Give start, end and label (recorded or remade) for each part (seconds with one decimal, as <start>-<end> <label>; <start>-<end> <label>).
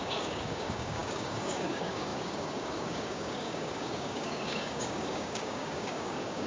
0.0-6.5 remade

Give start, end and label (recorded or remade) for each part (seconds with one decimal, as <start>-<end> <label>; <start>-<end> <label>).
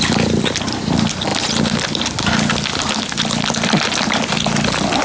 0.0-5.0 recorded